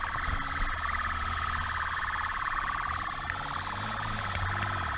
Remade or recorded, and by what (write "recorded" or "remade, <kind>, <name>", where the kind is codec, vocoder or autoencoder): recorded